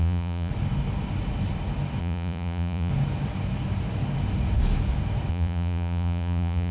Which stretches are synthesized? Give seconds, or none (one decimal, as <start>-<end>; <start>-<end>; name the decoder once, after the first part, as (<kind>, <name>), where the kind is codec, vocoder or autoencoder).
0.0-0.5 (vocoder, Vocos); 2.0-2.9; 5.3-6.7

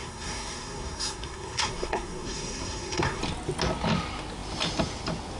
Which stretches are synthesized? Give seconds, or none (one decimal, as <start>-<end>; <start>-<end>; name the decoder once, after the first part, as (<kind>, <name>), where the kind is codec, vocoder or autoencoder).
0.0-3.2 (codec, SNAC)

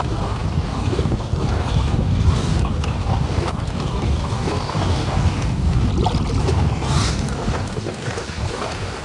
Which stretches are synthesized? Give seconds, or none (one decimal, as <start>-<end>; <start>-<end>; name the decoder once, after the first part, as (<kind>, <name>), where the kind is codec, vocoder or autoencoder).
0.0-5.9 (codec, DAC); 6.4-9.0

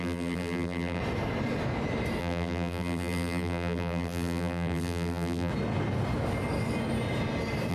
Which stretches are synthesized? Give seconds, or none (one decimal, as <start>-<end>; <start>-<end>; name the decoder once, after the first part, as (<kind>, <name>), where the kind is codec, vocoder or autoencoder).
0.0-1.0 (vocoder, BigVGAN v2); 2.2-5.5

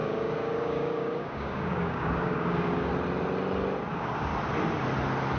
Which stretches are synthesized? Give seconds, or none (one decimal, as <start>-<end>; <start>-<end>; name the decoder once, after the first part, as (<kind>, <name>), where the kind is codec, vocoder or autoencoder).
0.0-2.9 (codec, DAC); 3.9-4.3

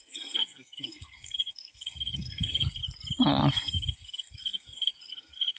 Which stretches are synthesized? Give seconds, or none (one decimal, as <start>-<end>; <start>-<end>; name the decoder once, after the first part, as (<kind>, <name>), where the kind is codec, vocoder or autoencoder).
0.0-2.8 (codec, SNAC); 3.5-5.6